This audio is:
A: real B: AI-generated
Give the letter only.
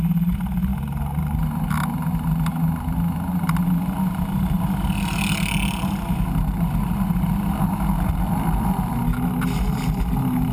A